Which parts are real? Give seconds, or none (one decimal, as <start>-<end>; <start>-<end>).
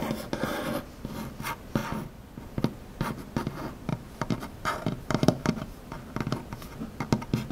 0.0-3.9; 6.0-7.5